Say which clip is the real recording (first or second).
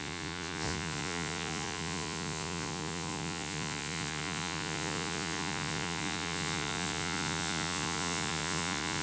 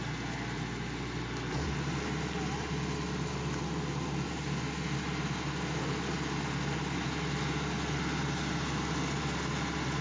second